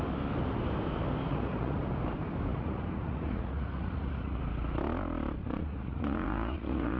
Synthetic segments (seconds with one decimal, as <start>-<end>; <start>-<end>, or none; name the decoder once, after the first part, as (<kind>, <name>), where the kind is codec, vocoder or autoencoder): 1.3-1.8 (vocoder, Vocos); 2.5-4.4; 5.4-7.0

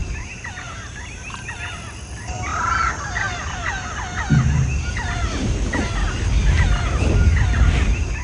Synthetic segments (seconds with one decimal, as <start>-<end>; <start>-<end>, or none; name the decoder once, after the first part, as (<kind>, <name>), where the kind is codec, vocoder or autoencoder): 0.0-1.5 (vocoder, BigVGAN v2)

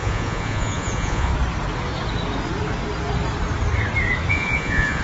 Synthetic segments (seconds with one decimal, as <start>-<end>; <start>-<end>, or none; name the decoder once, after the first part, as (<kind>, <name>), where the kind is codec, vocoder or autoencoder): 0.0-1.3 (vocoder, Vocos); 4.3-5.0

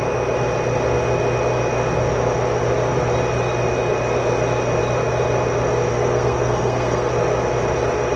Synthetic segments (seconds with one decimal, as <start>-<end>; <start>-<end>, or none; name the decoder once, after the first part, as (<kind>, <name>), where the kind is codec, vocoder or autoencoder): 5.9-7.1 (codec, SNAC)

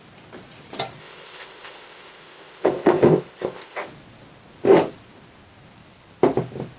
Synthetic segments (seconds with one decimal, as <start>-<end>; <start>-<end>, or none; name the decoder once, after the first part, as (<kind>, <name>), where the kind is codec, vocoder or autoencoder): 1.0-3.8 (codec, ZipCodec)

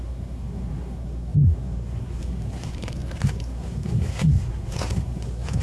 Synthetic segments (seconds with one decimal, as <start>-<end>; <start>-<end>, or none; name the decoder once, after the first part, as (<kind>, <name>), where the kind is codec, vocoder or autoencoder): 0.0-5.6 (codec, SNAC)